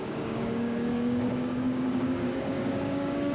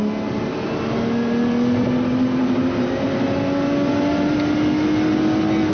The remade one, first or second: first